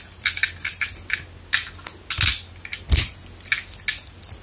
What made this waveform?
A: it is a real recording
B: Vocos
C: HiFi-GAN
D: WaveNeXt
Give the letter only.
A